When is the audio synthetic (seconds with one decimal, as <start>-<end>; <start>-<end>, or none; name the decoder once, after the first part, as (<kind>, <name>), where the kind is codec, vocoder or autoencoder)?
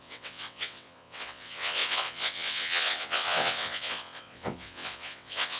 0.0-5.6 (vocoder, WaveNeXt)